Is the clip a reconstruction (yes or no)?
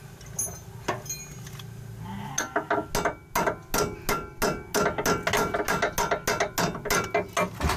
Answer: no